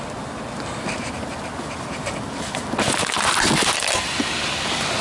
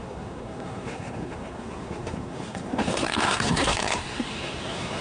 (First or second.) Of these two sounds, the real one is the first